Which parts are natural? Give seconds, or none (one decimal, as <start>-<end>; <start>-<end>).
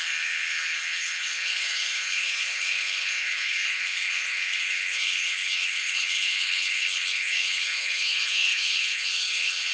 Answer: none